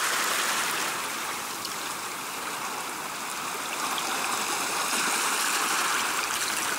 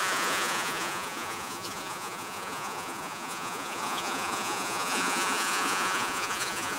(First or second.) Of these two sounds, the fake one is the second